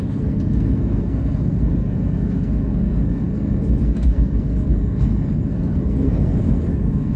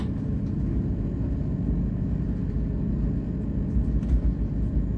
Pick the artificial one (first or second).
first